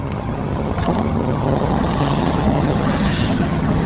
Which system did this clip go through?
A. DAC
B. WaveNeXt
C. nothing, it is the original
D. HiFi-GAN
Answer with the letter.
D